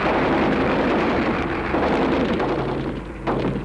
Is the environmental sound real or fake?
fake